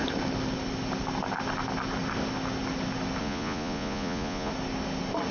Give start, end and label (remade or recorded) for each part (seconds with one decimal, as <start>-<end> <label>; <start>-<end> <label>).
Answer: 0.0-3.2 recorded; 3.2-4.5 remade; 4.5-5.3 recorded